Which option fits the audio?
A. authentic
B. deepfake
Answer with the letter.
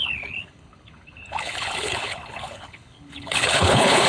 B